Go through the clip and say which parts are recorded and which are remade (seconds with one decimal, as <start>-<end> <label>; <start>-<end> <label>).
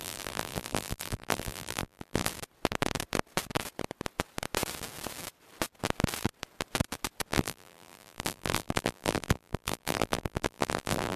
0.0-2.3 remade; 2.3-7.3 recorded; 7.3-11.2 remade